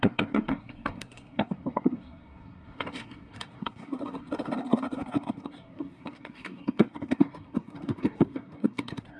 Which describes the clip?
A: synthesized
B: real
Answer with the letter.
A